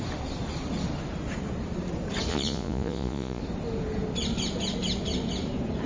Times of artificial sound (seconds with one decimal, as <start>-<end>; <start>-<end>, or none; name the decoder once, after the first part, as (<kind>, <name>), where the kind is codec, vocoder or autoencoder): 2.3-3.4 (vocoder, Vocos)